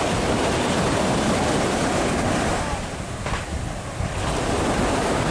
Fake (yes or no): no